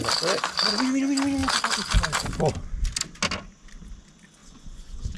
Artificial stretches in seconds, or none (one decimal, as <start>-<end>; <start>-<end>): 4.4-5.2